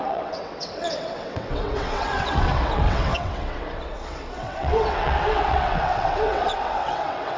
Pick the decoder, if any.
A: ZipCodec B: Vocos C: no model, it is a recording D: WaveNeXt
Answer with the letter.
D